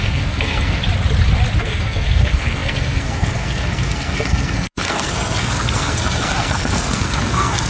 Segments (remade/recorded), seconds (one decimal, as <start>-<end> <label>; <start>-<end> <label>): 0.0-0.8 remade; 0.8-1.6 recorded; 1.6-7.7 remade